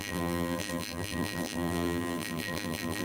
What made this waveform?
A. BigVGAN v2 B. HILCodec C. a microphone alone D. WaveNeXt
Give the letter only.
A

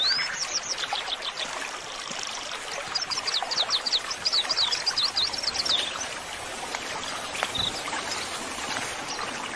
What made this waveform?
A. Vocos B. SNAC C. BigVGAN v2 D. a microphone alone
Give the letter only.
D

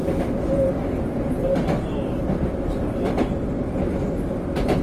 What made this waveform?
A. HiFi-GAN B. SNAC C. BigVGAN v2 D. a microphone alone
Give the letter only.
D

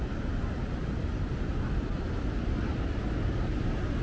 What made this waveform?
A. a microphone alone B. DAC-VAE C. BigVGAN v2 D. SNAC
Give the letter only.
A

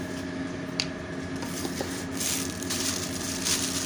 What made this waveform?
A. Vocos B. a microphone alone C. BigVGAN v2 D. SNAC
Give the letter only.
C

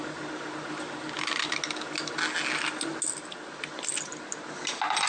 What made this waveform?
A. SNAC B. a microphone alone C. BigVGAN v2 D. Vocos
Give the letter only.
B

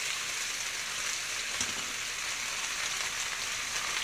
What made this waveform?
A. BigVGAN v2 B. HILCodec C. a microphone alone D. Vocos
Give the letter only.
C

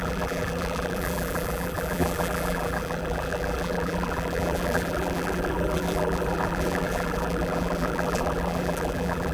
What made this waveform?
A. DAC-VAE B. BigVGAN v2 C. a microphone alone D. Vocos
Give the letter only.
B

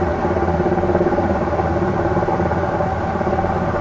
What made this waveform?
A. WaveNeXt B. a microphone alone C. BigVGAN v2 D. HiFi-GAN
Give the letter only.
C